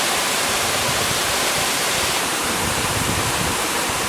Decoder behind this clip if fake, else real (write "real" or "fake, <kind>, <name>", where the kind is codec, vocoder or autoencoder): fake, vocoder, BigVGAN v2